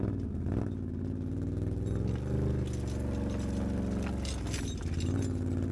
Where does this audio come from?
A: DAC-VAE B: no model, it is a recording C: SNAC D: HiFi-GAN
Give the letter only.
B